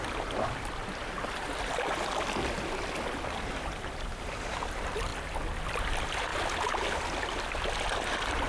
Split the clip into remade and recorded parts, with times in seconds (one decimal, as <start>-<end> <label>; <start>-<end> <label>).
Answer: 0.0-5.1 remade; 5.1-5.8 recorded; 5.8-6.3 remade; 6.3-7.4 recorded; 7.4-8.5 remade